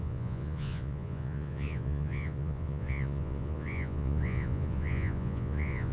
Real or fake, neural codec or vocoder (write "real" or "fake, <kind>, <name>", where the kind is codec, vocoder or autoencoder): fake, vocoder, Vocos